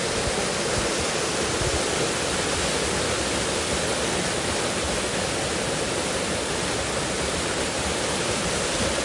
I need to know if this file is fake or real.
real